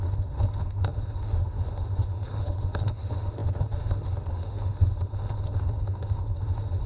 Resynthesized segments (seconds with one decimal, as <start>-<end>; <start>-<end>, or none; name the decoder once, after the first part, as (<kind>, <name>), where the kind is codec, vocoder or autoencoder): 0.0-6.9 (autoencoder, DAC-VAE)